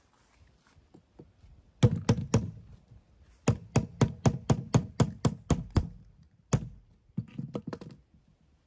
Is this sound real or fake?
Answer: real